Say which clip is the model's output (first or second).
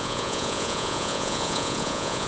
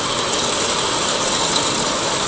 first